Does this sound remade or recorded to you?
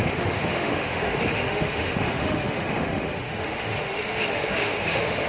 remade